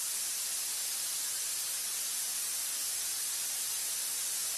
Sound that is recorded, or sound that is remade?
remade